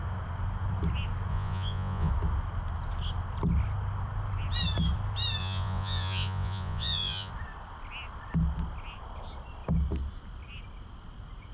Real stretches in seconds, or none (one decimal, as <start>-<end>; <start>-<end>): 0.0-1.3; 2.1-5.4; 7.3-11.5